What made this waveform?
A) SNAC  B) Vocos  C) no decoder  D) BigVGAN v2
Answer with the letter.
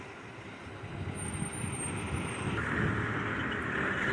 C